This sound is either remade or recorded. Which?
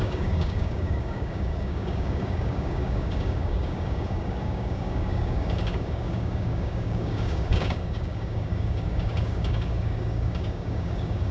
remade